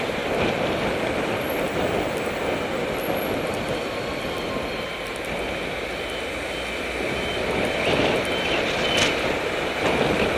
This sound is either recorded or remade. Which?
recorded